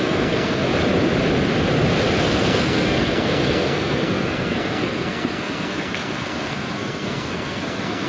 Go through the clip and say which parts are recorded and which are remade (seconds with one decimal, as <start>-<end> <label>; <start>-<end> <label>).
0.0-0.7 remade; 0.7-2.2 recorded; 2.2-8.1 remade